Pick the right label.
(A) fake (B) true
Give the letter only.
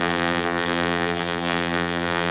A